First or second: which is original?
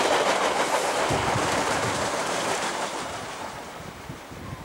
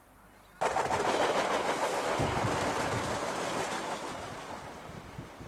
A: second